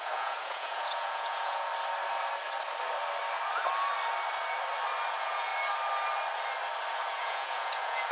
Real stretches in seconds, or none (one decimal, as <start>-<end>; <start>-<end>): 1.7-5.1; 5.5-6.9